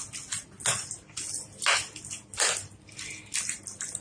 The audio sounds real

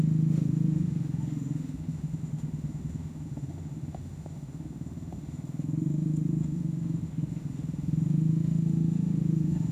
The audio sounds fake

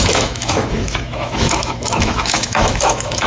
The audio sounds fake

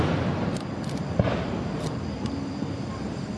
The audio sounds real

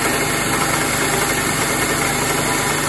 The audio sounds real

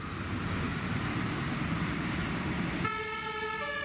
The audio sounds fake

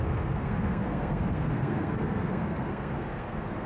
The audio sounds fake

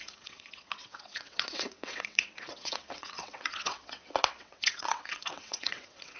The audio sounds fake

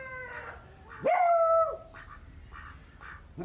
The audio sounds real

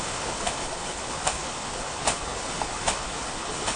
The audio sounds fake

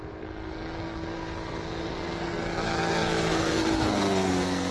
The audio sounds fake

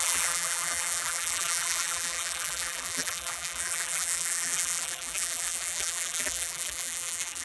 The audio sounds fake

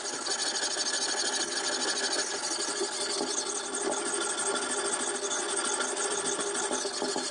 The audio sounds real